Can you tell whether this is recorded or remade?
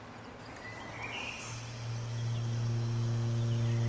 recorded